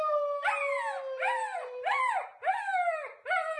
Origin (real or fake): real